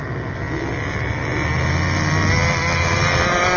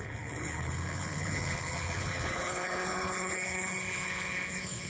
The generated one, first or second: second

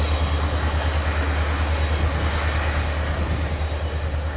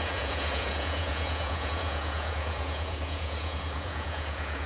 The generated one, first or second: second